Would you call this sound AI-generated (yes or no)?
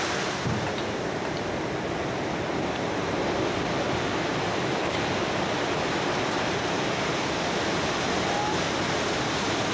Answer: no